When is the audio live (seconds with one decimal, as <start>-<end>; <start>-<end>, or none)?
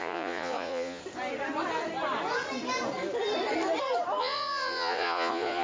1.0-4.2